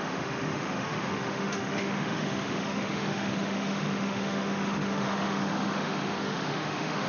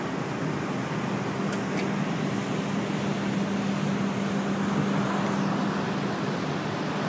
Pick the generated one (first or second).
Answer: first